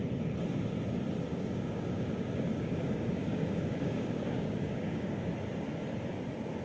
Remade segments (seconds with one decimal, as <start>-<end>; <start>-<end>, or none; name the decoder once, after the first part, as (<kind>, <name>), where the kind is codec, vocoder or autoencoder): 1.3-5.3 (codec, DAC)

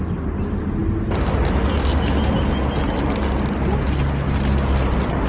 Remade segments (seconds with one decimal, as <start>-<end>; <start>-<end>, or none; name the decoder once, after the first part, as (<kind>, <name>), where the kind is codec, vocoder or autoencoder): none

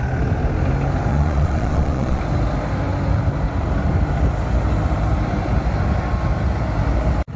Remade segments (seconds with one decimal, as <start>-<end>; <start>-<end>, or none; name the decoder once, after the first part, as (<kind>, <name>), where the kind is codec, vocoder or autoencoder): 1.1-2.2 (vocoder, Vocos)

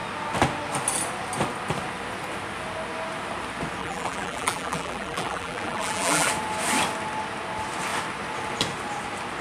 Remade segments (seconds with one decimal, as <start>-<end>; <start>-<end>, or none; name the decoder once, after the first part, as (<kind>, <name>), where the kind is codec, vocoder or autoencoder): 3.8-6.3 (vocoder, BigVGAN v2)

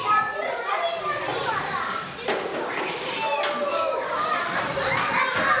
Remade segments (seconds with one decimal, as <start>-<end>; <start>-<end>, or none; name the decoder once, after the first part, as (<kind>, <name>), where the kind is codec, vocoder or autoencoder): 2.5-3.1 (codec, DAC); 3.7-4.4